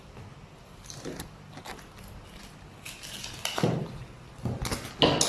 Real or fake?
real